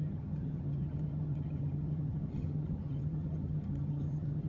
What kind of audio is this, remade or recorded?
remade